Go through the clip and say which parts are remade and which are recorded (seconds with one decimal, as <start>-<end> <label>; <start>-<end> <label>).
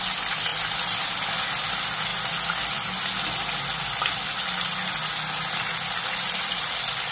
0.0-7.1 recorded